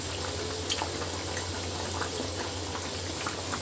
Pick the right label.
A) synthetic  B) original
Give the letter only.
B